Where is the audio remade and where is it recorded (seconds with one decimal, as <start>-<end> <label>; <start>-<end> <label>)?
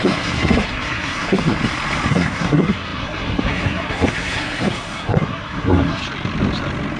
0.0-1.6 remade; 1.6-2.1 recorded; 2.1-6.0 remade; 6.0-7.0 recorded